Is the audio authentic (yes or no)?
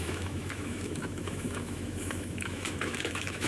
no